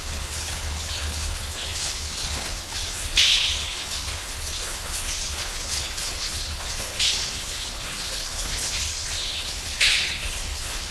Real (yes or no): no